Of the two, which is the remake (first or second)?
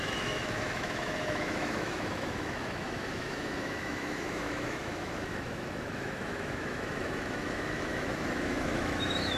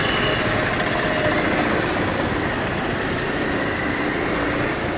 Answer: first